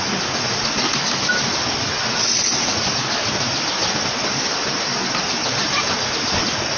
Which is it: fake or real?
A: real